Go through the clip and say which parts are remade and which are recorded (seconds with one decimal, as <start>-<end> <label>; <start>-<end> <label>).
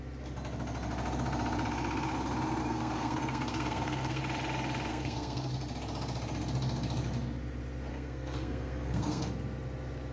0.0-2.6 recorded; 2.6-4.2 remade; 4.2-4.9 recorded; 4.9-5.5 remade; 5.5-7.9 recorded; 7.9-9.3 remade; 9.3-10.1 recorded